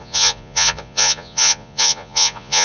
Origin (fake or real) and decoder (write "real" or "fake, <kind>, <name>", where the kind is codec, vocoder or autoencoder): fake, vocoder, Vocos